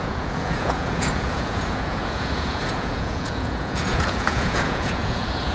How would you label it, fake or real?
fake